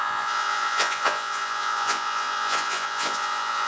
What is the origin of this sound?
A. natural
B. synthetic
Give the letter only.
B